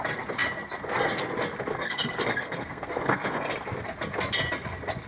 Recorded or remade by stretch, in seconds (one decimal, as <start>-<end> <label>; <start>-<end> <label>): 0.0-1.7 recorded; 1.7-3.5 remade; 3.5-5.1 recorded

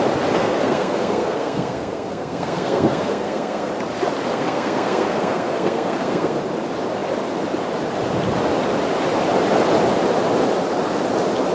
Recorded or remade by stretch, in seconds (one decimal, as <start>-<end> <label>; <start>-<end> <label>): 0.0-0.4 recorded; 0.4-3.7 remade; 3.7-4.3 recorded; 4.3-6.4 remade; 6.4-11.5 recorded